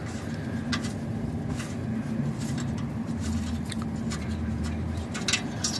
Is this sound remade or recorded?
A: recorded